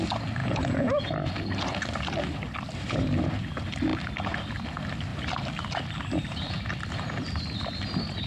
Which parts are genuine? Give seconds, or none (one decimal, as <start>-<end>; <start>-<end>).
0.0-0.4; 1.1-8.3